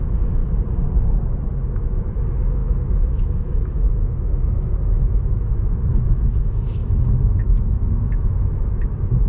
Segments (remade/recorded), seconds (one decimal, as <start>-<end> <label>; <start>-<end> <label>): 0.0-0.4 remade; 0.4-1.7 recorded; 1.7-9.3 remade